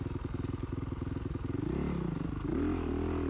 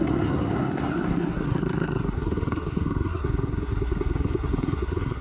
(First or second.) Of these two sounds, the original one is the first